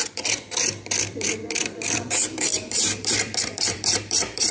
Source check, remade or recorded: remade